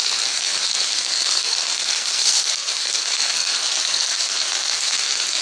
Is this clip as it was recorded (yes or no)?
no